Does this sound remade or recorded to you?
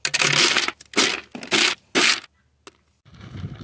recorded